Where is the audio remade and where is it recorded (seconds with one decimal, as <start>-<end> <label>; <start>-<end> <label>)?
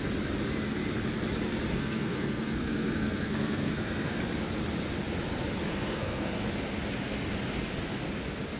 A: 0.0-1.7 recorded; 1.7-4.2 remade; 4.2-5.7 recorded; 5.7-6.4 remade; 6.4-8.6 recorded